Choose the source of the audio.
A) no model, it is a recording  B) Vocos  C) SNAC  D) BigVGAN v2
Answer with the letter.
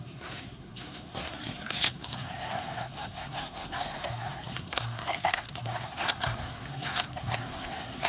C